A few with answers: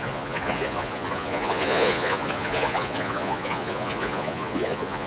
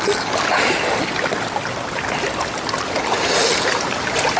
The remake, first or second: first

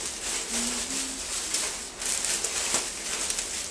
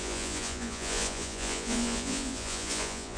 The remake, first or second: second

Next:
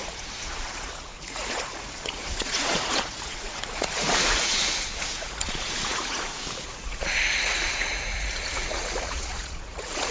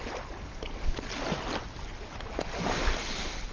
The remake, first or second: first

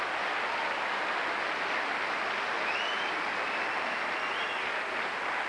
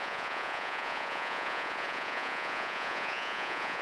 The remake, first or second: second